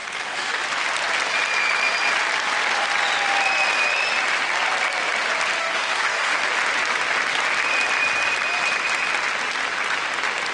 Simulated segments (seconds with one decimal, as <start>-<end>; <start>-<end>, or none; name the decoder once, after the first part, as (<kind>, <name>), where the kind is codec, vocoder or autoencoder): 0.0-0.6 (codec, DAC); 5.6-6.4